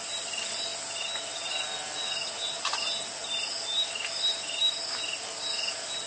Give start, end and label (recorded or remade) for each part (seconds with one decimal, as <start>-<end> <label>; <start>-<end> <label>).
0.0-6.1 recorded